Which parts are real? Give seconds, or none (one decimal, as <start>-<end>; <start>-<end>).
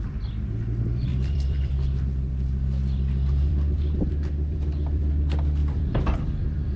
0.0-1.1; 5.1-5.6